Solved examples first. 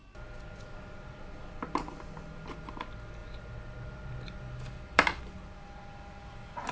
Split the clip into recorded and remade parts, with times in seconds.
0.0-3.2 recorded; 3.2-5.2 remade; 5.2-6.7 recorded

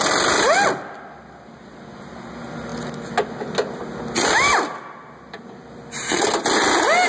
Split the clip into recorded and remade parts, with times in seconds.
0.0-7.1 recorded

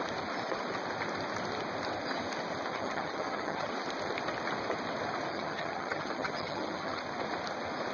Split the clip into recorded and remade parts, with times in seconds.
0.0-2.7 recorded; 2.7-3.7 remade; 3.7-5.3 recorded; 5.3-7.0 remade; 7.0-7.9 recorded

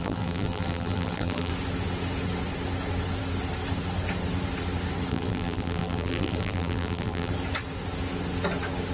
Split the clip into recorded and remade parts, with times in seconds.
0.0-1.5 remade; 1.5-5.1 recorded; 5.1-7.3 remade; 7.3-8.9 recorded

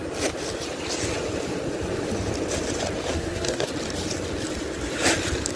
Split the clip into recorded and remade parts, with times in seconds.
0.0-3.1 recorded; 3.1-3.7 remade; 3.7-5.6 recorded